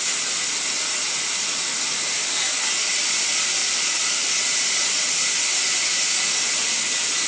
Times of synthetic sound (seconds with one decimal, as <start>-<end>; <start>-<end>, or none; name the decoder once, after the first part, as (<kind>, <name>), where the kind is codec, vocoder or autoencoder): 3.6-4.3 (vocoder, BigVGAN v2)